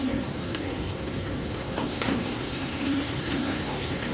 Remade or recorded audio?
remade